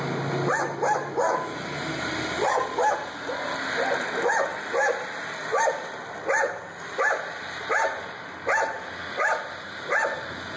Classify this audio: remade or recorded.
recorded